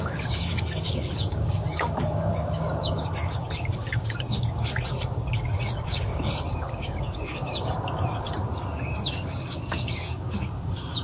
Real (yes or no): no